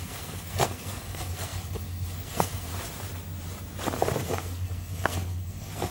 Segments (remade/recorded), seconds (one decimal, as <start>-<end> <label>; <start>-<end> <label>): 0.0-2.7 remade; 2.7-4.2 recorded; 4.2-5.9 remade